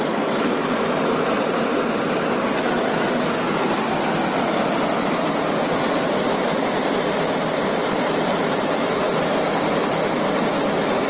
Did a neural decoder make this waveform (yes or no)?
no